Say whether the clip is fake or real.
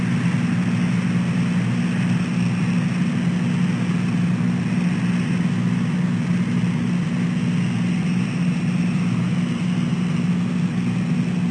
real